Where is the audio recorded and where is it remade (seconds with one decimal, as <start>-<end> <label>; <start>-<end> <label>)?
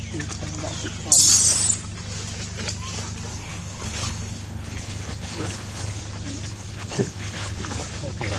0.0-3.3 recorded; 3.3-6.0 remade; 6.0-6.5 recorded; 6.5-7.6 remade; 7.6-8.4 recorded